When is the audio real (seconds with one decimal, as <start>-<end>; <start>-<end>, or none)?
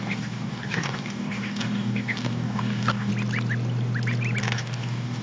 3.1-4.4